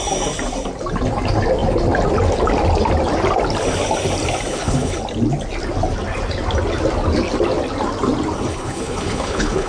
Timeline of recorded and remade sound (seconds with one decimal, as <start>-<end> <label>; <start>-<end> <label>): 0.0-4.5 recorded; 4.5-5.0 remade; 5.0-8.5 recorded; 8.5-9.7 remade